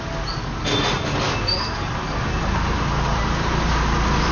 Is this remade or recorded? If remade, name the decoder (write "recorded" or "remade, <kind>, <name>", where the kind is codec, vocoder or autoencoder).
recorded